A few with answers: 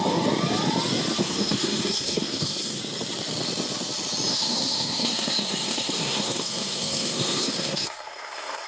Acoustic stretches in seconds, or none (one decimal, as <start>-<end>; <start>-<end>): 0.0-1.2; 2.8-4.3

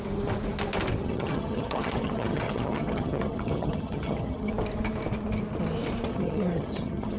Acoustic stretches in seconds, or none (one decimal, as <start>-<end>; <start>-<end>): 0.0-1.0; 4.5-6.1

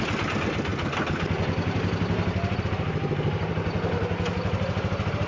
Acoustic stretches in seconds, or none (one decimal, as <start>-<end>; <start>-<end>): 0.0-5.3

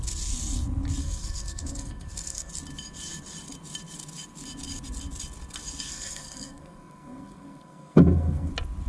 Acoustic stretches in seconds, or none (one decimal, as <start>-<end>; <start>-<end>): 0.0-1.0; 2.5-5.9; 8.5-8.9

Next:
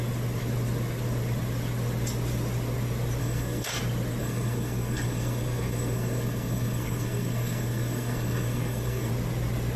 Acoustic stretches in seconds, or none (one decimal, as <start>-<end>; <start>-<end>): 0.0-3.2; 3.8-4.2; 9.1-9.8

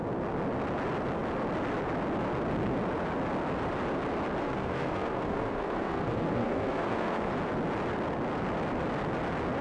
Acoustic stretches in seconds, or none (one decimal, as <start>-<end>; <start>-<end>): 0.0-4.4; 7.3-9.6

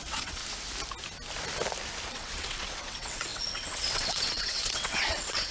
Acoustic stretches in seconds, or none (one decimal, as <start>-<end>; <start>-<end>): 0.4-2.1